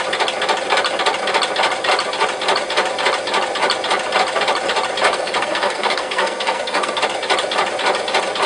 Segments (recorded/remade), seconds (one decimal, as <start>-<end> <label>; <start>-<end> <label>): 0.0-5.1 recorded; 5.1-7.0 remade; 7.0-8.5 recorded